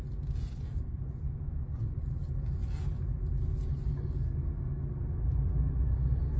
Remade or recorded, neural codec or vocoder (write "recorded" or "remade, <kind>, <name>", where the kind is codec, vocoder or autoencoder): recorded